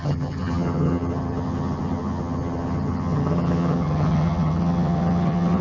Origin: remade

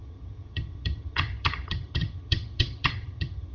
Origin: remade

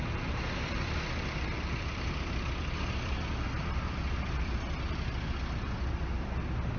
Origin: recorded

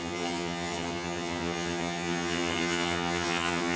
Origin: remade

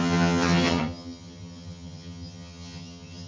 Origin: remade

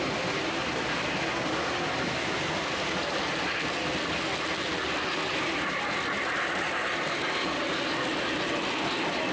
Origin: recorded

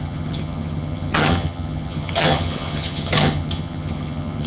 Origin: remade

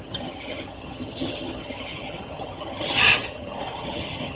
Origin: remade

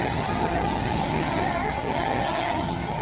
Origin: remade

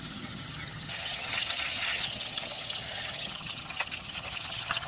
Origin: remade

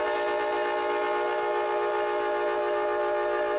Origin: recorded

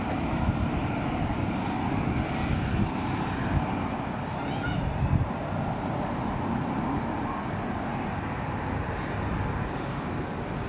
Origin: recorded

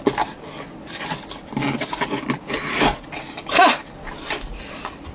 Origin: recorded